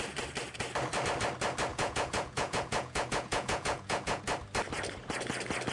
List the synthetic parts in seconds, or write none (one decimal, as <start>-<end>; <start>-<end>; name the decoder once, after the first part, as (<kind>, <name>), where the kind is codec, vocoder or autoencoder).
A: 1.7-4.2 (vocoder, Vocos)